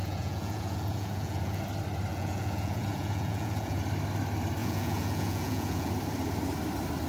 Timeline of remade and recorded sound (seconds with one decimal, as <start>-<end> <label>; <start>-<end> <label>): 0.0-1.6 remade; 1.6-2.1 recorded; 2.1-3.8 remade; 3.8-4.6 recorded; 4.6-5.9 remade; 5.9-7.1 recorded